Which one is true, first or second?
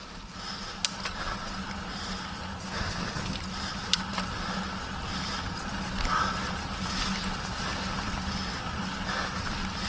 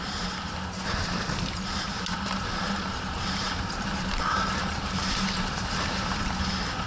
first